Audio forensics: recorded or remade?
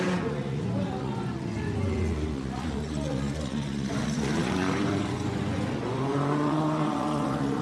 remade